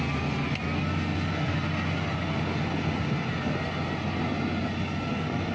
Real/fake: real